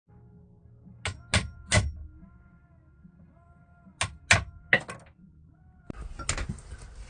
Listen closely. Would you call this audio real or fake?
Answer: real